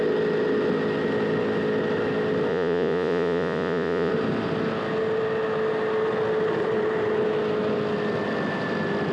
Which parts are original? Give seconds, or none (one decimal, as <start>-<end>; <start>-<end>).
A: 0.0-2.5; 4.1-9.1